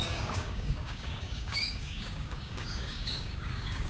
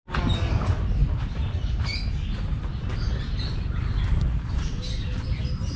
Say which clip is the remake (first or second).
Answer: first